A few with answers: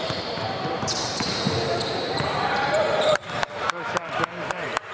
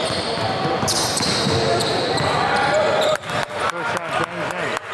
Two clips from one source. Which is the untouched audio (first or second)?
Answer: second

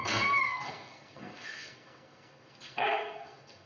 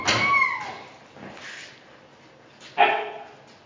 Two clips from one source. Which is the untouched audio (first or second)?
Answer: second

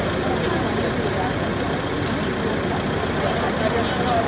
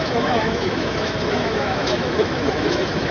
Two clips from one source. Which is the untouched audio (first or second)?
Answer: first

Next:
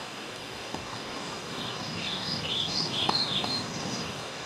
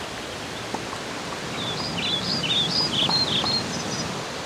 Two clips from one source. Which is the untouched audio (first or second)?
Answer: second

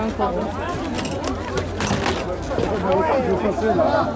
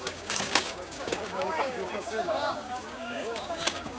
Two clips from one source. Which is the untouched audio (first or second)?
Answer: first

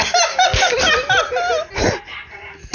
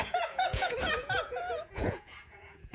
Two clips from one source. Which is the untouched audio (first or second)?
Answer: first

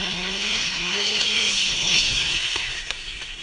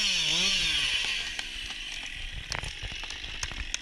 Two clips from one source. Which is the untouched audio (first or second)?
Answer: second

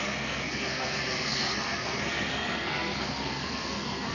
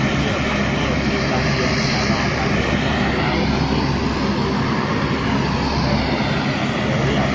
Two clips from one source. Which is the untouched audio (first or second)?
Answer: second